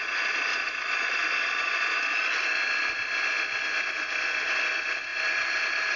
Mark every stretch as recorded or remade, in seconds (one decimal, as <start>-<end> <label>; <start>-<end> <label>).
0.0-6.0 recorded

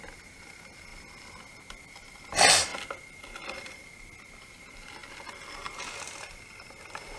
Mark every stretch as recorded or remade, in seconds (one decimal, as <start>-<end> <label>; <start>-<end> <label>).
0.0-7.2 recorded

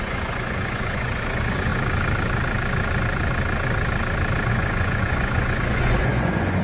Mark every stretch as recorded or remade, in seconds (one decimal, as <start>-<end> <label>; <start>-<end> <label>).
0.0-1.7 remade; 1.7-4.5 recorded; 4.5-6.6 remade

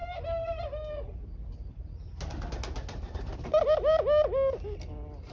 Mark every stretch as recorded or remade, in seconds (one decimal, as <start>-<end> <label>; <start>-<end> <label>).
0.0-5.3 recorded

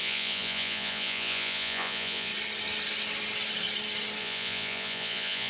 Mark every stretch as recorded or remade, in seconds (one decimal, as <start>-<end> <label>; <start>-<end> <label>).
0.0-2.3 remade; 2.3-4.2 recorded; 4.2-5.5 remade

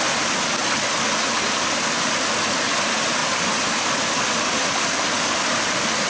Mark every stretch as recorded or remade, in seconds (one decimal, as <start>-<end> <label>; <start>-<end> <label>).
0.0-6.1 recorded